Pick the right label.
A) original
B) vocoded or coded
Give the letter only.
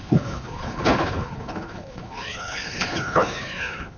B